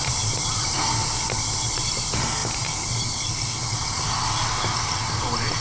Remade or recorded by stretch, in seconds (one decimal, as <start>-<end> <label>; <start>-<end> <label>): 0.0-5.6 recorded